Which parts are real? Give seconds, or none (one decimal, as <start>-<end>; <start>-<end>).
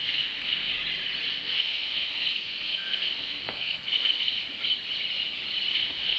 0.7-1.3; 4.4-5.7